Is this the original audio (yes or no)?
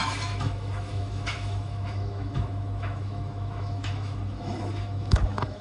no